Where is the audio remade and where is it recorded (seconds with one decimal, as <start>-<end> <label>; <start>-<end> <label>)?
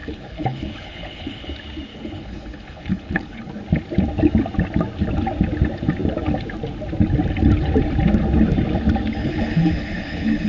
0.0-1.5 remade; 1.5-1.9 recorded; 1.9-3.5 remade; 3.5-9.2 recorded; 9.2-10.5 remade